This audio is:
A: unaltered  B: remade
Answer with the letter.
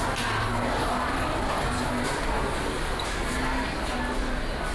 A